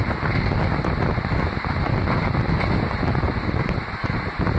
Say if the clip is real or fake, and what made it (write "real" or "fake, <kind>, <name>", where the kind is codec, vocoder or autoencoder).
real